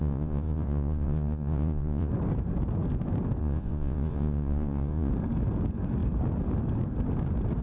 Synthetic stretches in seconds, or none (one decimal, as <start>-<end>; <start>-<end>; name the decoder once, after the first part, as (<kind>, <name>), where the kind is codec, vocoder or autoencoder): 0.0-2.1 (vocoder, Vocos); 3.4-5.1